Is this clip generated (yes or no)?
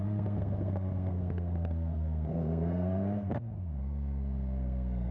yes